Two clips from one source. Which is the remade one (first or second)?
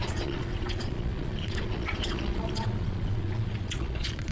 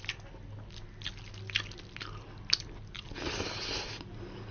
first